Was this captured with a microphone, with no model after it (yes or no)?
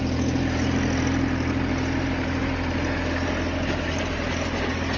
yes